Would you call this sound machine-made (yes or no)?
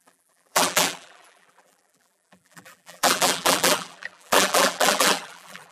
yes